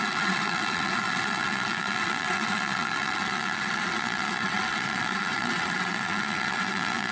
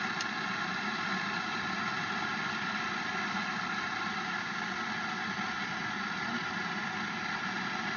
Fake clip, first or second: first